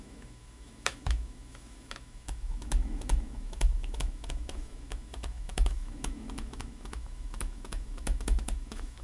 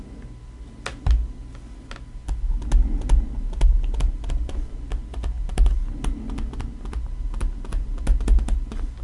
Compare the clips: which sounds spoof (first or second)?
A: first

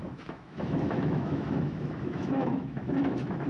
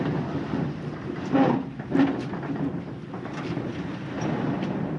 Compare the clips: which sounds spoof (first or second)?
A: first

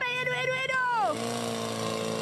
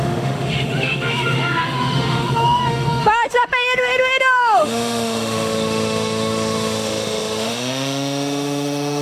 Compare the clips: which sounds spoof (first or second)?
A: second